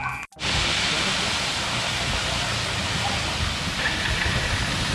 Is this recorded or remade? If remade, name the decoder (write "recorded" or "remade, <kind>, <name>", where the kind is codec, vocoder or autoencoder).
recorded